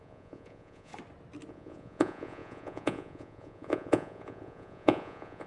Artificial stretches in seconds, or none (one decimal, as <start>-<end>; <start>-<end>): 0.0-0.9; 1.5-5.5